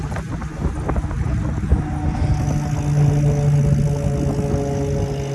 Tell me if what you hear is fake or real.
real